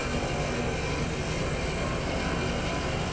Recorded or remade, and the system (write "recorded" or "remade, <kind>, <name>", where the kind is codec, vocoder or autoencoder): recorded